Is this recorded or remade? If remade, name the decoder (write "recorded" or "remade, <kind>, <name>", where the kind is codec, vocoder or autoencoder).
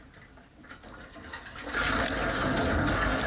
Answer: recorded